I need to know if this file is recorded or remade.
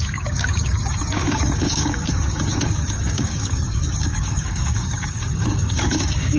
remade